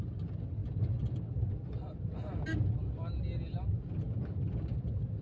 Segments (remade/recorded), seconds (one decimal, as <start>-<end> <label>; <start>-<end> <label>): 0.0-5.2 recorded